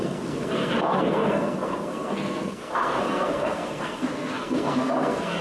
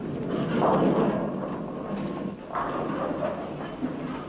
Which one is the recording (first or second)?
second